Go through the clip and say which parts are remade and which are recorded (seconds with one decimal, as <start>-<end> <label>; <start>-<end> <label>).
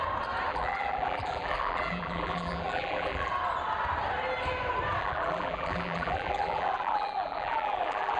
0.0-0.5 recorded; 0.5-3.3 remade; 3.3-5.0 recorded; 5.0-8.2 remade